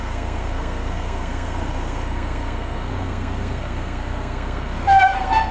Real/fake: fake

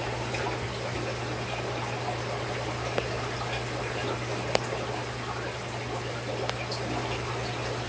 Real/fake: real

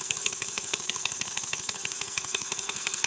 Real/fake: fake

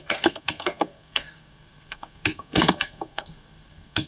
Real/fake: fake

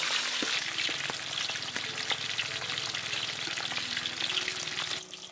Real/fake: real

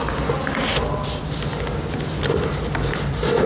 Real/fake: real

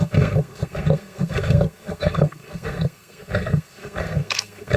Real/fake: fake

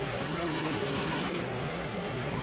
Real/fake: fake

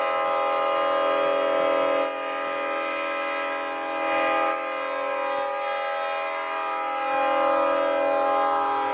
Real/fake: real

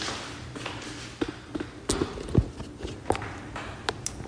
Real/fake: real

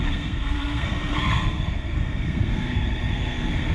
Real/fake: fake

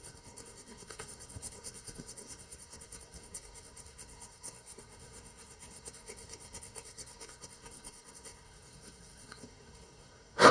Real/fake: fake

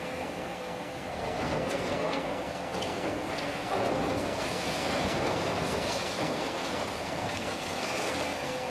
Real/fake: fake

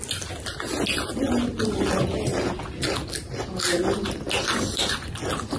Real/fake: real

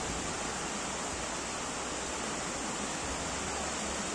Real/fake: real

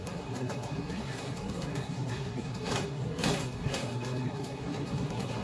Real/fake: fake